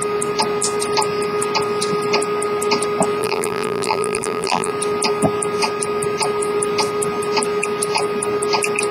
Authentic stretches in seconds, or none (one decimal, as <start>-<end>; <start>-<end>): 0.0-3.2; 4.7-8.9